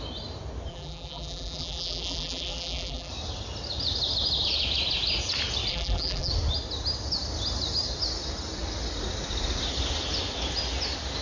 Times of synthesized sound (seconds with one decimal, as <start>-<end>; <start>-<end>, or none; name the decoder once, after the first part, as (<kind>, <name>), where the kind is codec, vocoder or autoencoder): 0.7-3.1 (vocoder, BigVGAN v2); 5.7-6.3